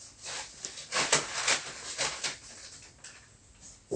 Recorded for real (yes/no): yes